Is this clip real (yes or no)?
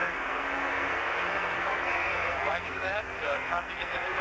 no